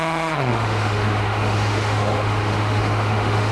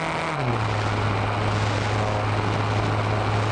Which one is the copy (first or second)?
first